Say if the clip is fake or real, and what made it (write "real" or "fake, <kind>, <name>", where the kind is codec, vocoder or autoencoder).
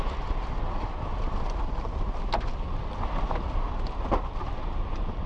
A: real